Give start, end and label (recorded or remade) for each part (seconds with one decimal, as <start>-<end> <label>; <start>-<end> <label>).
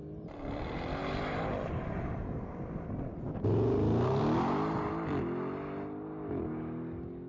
0.0-7.3 recorded